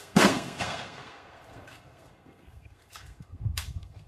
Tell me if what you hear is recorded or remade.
remade